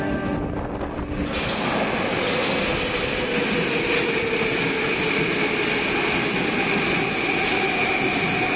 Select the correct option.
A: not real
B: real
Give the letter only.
B